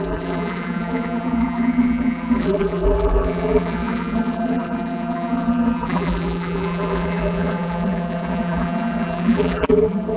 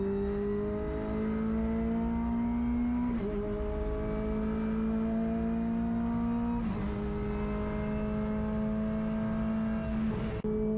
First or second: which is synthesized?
first